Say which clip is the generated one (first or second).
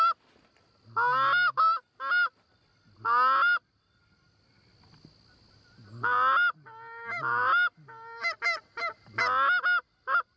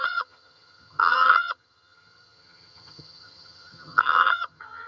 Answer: second